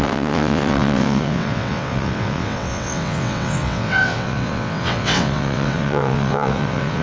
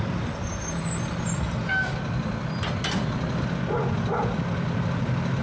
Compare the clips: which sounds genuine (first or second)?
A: second